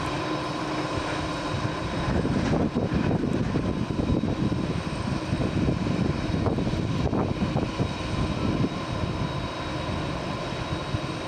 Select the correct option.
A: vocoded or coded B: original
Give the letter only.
B